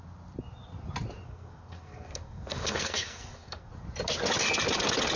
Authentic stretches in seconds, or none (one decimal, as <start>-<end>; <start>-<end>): 0.0-1.2; 3.7-5.2